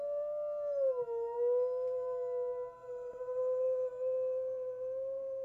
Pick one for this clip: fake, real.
real